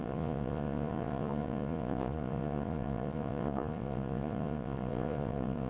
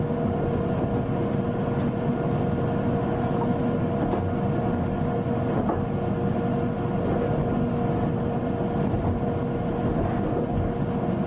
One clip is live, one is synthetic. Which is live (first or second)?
second